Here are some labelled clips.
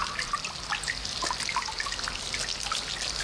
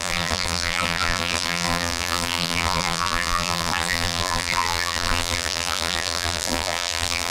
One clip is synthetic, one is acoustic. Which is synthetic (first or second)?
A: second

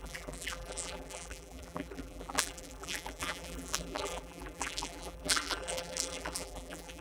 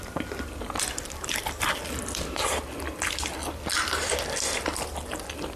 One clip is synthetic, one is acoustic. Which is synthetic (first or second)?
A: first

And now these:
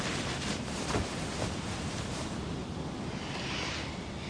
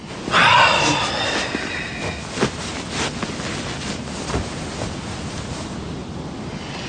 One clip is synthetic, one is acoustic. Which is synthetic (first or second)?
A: first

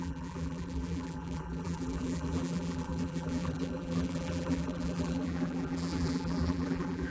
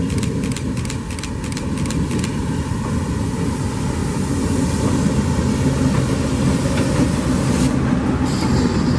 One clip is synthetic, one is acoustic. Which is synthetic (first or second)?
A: first